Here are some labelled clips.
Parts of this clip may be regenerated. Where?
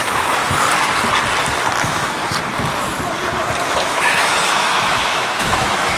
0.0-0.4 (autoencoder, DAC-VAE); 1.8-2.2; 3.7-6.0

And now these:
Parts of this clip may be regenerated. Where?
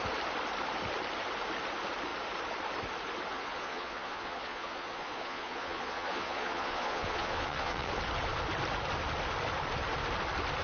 3.3-7.9 (vocoder, Vocos)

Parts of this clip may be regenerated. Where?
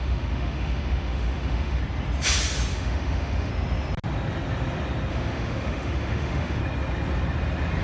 0.0-1.8 (autoencoder, DAC-VAE); 2.7-3.5; 5.1-6.6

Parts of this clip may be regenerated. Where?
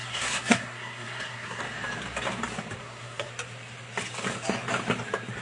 0.0-1.6 (codec, SNAC); 2.8-3.3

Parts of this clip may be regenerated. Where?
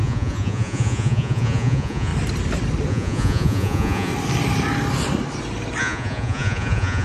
0.0-2.1 (vocoder, Vocos); 2.9-4.1; 5.8-7.0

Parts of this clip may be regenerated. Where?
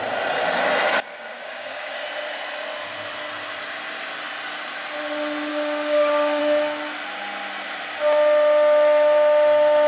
1.1-2.0 (codec, DAC); 5.5-6.4